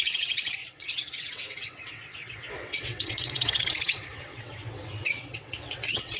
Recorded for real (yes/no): no